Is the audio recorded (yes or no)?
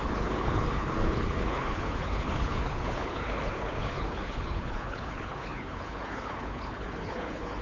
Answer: no